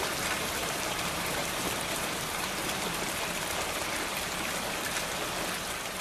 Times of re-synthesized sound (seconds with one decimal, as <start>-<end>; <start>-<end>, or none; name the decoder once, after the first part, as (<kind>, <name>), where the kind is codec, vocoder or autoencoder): 0.6-3.2 (vocoder, BigVGAN v2)